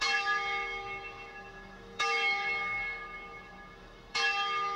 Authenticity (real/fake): fake